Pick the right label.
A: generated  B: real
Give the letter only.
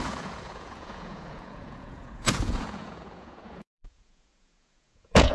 A